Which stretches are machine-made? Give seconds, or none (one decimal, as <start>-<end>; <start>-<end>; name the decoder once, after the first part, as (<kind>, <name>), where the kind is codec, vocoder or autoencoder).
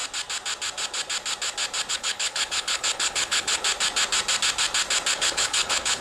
1.9-3.6 (codec, HILCodec); 5.1-6.0